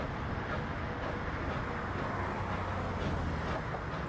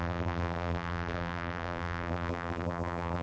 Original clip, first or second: first